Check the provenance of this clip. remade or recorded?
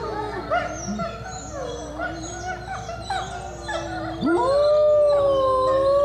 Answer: recorded